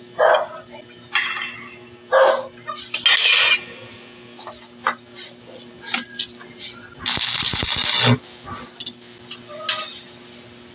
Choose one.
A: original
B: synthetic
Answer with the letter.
A